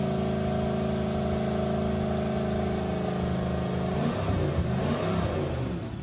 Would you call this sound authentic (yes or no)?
yes